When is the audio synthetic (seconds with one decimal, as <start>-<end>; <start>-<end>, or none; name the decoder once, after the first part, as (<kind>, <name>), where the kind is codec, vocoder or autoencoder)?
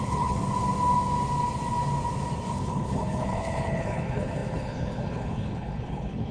0.0-0.4 (codec, HILCodec); 2.5-6.3